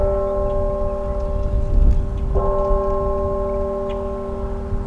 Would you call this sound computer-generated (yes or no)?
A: no